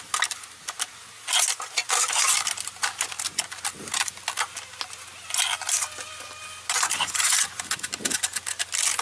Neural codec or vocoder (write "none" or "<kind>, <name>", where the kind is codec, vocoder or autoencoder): none